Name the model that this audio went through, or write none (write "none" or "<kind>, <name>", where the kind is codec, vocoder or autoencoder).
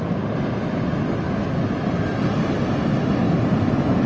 none